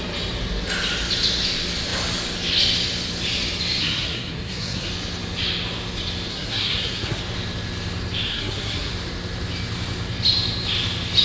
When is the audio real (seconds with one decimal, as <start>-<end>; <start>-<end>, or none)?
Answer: 0.0-3.8; 4.9-6.3; 7.2-8.3; 8.9-11.2

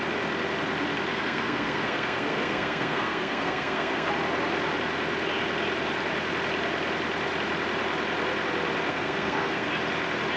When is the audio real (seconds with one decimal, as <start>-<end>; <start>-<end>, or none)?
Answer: 0.0-1.1; 4.1-8.9; 9.7-10.4

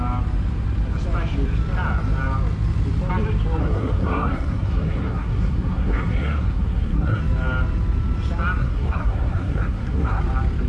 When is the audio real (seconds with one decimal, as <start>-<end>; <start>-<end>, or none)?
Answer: 0.0-3.6; 7.2-8.6; 10.2-10.7

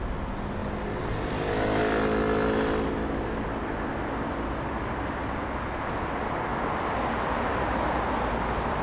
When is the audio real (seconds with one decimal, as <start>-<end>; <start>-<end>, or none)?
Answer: 0.0-8.8

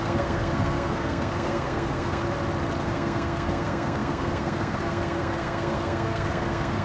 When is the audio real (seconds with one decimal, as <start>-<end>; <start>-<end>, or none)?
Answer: 2.2-2.8

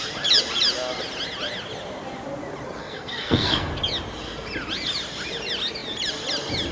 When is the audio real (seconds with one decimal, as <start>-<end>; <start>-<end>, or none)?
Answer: 0.0-2.8; 3.7-6.7

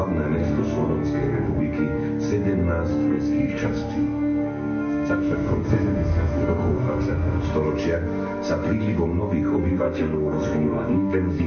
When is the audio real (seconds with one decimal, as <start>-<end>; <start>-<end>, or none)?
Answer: 0.0-0.4; 1.6-2.9; 7.4-9.7